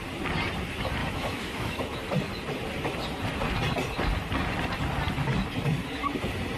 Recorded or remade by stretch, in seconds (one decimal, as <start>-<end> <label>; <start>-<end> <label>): 0.0-1.0 recorded; 1.0-1.8 remade; 1.8-6.6 recorded